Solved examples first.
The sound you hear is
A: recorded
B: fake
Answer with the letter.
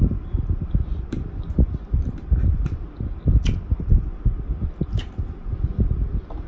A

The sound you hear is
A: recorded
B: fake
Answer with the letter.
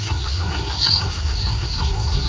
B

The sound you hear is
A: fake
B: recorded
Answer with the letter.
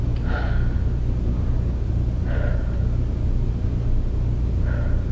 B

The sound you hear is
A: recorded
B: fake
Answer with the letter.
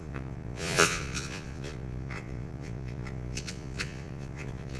B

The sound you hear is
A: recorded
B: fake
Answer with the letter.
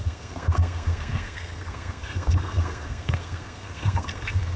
B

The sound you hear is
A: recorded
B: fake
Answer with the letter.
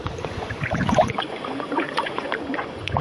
B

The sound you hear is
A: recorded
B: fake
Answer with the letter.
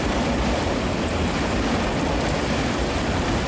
A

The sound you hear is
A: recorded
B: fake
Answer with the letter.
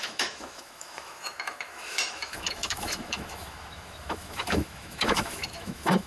B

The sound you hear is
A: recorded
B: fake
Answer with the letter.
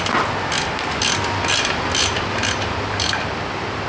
A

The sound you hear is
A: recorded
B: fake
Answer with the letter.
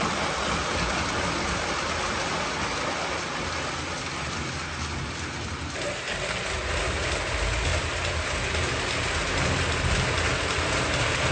A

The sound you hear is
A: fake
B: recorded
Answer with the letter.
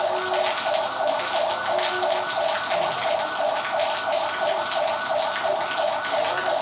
B